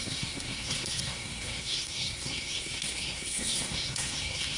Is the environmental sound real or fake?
fake